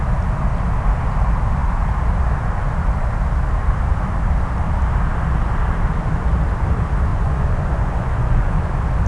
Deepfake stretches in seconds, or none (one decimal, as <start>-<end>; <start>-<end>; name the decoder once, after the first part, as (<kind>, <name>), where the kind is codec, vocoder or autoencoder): 7.1-8.7 (vocoder, Vocos)